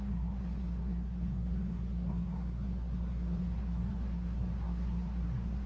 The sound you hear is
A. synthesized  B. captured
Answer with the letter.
A